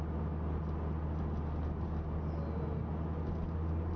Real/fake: real